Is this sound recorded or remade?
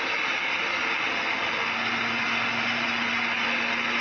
recorded